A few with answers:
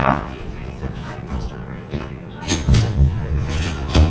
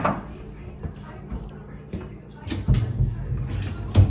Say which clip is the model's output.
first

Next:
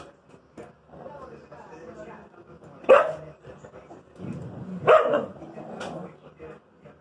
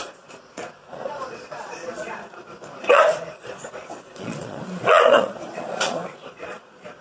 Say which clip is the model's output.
second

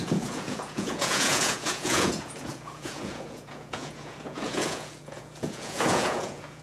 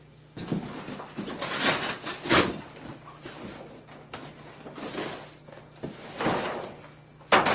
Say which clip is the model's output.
first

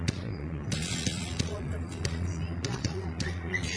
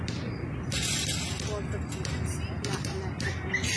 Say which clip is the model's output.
first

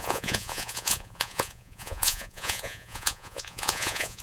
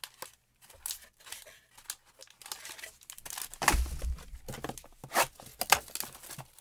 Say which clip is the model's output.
first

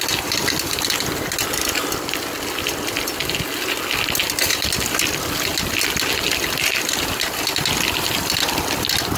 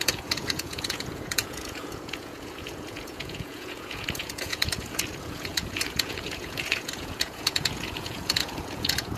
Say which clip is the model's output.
second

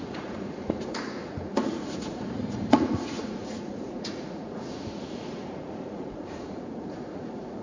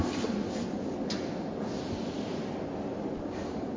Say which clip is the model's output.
first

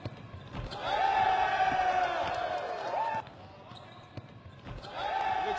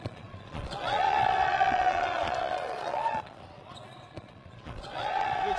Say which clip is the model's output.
second